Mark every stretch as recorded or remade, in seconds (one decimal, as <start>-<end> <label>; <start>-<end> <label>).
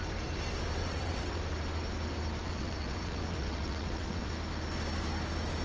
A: 0.0-0.8 recorded; 0.8-1.4 remade; 1.4-2.4 recorded; 2.4-4.3 remade; 4.3-5.6 recorded